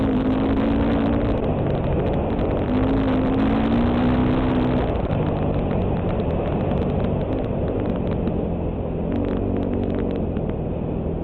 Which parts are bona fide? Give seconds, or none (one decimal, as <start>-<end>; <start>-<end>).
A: 0.0-11.2